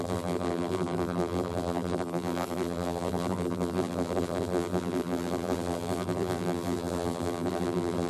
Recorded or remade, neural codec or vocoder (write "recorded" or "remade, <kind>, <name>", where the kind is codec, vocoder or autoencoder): remade, vocoder, BigVGAN v2